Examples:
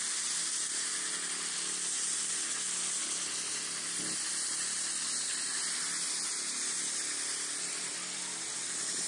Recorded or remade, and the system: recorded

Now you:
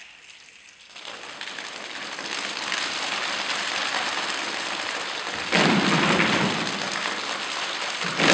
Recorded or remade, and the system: recorded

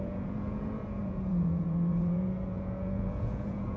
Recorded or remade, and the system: remade, vocoder, Vocos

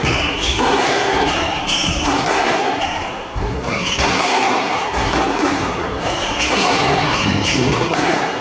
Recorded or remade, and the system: remade, codec, SNAC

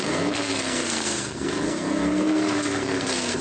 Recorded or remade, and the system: remade, codec, SNAC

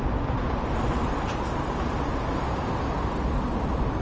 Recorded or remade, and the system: recorded